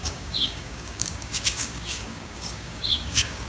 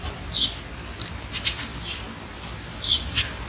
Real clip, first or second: second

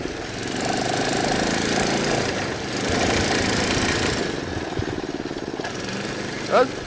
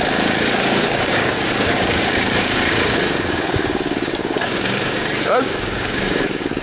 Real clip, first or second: first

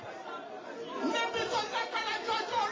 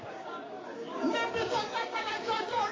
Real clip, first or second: first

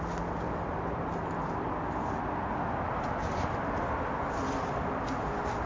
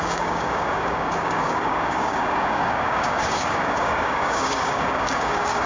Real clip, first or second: first